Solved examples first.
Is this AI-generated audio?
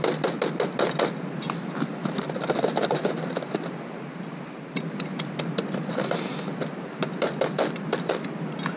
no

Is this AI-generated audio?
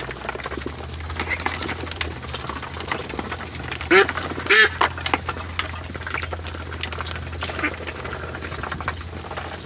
no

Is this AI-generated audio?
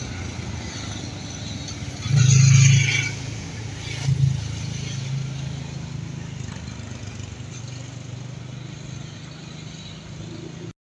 no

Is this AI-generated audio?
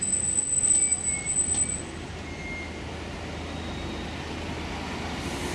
no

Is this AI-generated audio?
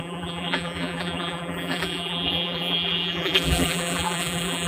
yes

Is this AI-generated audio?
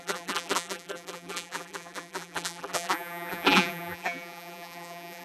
yes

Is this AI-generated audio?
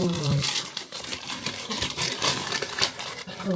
yes